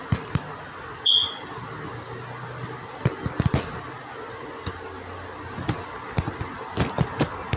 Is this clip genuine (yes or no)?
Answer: yes